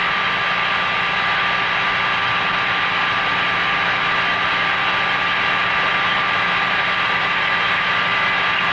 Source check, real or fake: real